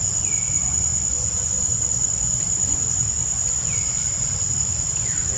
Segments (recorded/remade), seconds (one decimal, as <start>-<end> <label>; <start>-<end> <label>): 0.0-5.4 remade